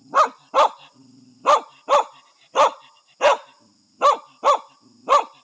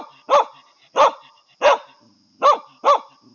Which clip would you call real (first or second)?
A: second